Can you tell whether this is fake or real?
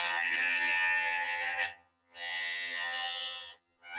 fake